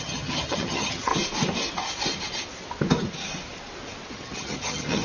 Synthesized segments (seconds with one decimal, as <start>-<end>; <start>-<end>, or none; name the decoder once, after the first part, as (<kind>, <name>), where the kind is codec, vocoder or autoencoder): 0.0-1.1 (vocoder, HiFi-GAN); 4.1-5.0